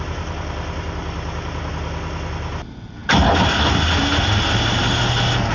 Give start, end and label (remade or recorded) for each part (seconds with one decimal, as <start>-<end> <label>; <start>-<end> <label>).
0.0-5.5 recorded